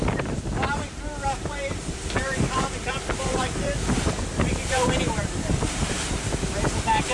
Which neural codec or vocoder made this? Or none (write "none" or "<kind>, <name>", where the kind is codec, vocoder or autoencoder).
vocoder, BigVGAN v2